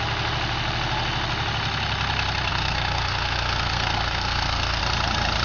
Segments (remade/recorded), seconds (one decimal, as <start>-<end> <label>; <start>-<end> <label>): 0.0-2.5 recorded; 2.5-4.8 remade; 4.8-5.4 recorded